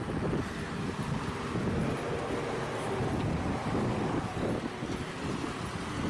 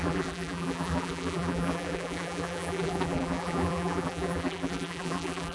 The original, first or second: first